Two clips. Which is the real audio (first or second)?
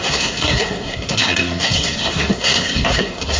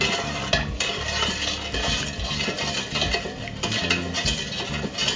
second